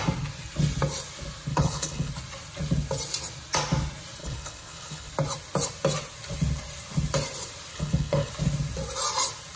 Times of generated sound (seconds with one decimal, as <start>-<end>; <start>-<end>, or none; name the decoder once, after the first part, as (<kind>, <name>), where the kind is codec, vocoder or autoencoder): 1.5-2.1 (codec, HILCodec); 4.2-5.1; 7.7-8.3